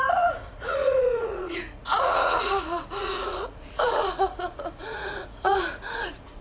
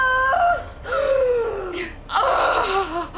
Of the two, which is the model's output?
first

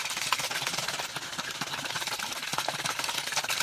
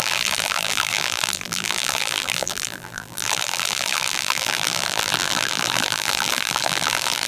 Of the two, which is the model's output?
second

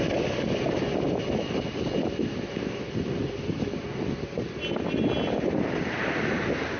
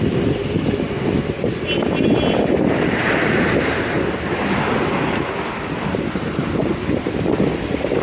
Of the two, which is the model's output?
second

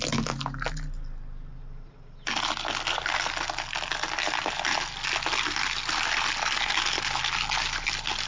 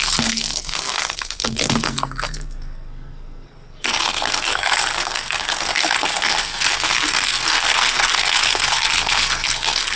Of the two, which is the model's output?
second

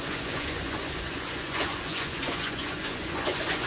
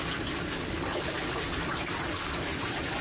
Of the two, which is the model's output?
first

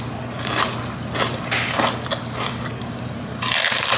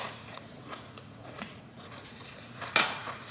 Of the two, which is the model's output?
second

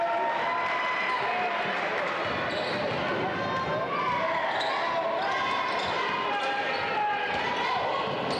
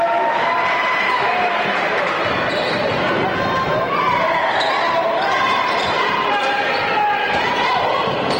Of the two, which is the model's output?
second